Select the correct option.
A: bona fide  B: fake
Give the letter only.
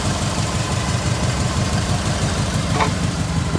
B